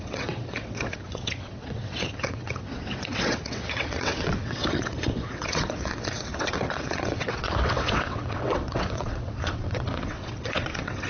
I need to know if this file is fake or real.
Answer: fake